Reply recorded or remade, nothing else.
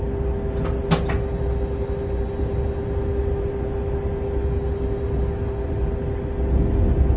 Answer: recorded